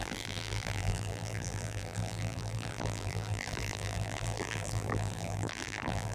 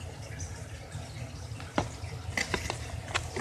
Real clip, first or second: second